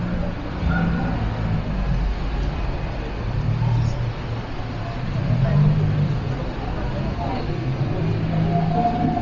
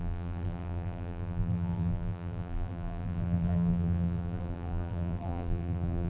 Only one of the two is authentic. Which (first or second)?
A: first